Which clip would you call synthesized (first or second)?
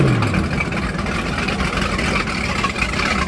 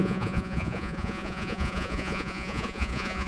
second